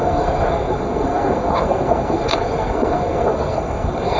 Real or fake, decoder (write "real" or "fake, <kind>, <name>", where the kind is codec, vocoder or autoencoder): fake, codec, SNAC